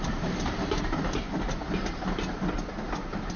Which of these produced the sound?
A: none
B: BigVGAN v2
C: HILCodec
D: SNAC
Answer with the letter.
A